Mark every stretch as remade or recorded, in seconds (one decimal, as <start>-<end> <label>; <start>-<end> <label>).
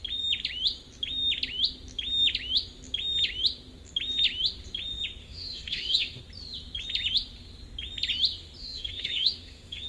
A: 0.0-5.2 recorded; 5.2-6.2 remade; 6.2-8.6 recorded; 8.6-9.9 remade